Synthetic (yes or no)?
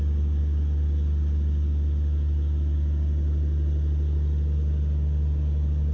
no